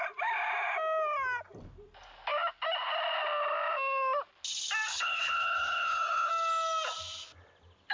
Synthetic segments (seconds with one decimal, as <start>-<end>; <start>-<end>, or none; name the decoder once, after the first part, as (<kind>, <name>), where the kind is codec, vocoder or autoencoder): 4.9-6.3 (codec, HILCodec)